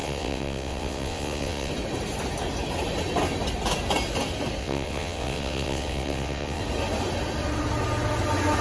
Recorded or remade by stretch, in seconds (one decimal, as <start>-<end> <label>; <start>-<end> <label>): 0.0-1.7 remade; 1.7-4.6 recorded; 4.6-6.6 remade; 6.6-8.6 recorded